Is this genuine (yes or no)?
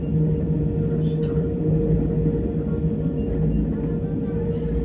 yes